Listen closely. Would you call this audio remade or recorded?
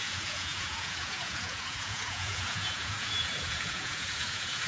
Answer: remade